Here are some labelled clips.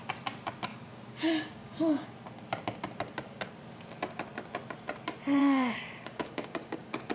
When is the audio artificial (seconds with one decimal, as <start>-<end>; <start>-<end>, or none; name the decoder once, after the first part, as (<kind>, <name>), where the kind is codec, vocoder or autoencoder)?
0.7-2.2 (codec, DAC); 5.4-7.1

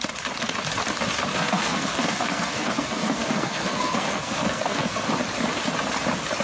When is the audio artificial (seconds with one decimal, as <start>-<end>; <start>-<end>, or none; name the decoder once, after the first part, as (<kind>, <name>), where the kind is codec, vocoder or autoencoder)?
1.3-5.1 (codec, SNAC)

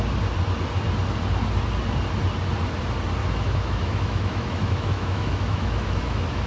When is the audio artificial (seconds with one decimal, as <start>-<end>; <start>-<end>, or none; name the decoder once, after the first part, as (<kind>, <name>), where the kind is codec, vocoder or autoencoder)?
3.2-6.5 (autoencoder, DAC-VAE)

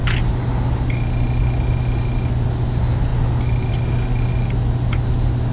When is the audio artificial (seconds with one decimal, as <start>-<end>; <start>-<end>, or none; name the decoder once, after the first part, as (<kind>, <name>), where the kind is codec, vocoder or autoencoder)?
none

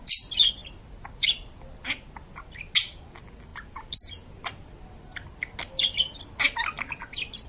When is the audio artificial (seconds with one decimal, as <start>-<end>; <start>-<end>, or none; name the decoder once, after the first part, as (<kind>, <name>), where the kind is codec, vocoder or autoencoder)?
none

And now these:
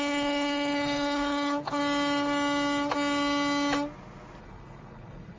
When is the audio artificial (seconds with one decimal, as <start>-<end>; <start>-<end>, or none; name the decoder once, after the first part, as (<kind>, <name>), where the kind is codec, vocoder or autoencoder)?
0.0-1.8 (codec, HILCodec); 4.4-5.4

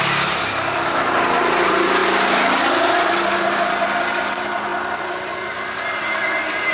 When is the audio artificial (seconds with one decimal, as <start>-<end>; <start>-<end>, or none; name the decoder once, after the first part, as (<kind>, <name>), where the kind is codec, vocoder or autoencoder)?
none

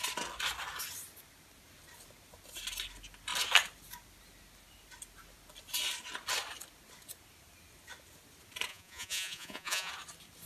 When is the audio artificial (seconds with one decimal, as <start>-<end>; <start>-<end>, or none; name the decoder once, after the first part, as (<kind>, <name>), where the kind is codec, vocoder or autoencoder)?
8.7-9.9 (vocoder, Vocos)